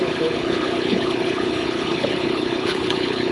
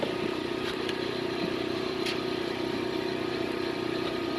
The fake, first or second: first